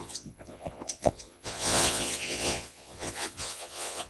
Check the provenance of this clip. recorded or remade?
remade